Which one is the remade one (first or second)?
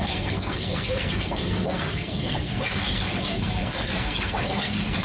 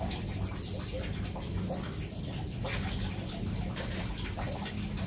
first